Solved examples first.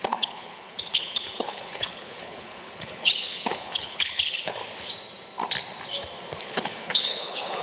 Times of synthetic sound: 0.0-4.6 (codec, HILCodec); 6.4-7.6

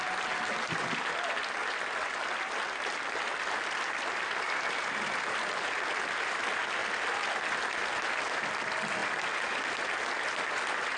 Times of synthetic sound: none

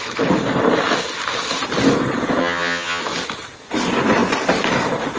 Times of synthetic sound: 2.4-3.0 (vocoder, HiFi-GAN)

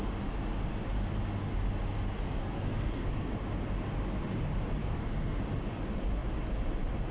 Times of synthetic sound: 2.4-3.3 (codec, SNAC); 4.8-5.4

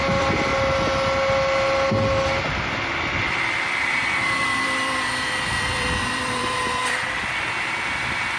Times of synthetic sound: 0.0-0.5 (vocoder, BigVGAN v2); 3.2-6.8; 7.6-8.4

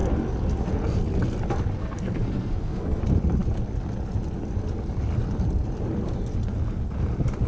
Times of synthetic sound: 1.8-3.0 (codec, SNAC)